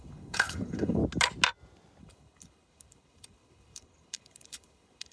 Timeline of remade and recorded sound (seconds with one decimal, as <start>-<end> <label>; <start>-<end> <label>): 0.0-1.0 remade; 1.0-2.0 recorded; 2.0-5.1 remade